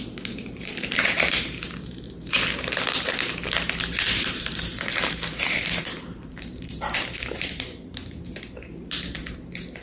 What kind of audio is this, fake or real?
fake